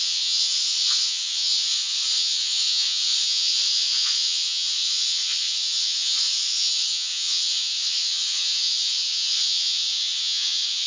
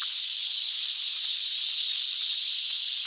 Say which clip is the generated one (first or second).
first